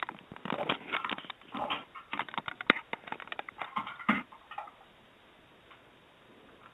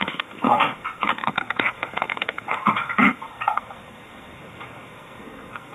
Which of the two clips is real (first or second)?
first